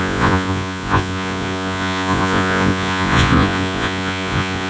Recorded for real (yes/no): no